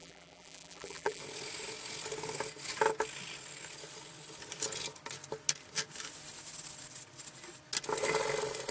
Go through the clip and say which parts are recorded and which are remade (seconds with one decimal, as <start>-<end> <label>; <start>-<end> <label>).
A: 0.0-1.2 remade; 1.2-8.7 recorded